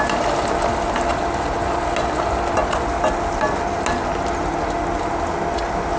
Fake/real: real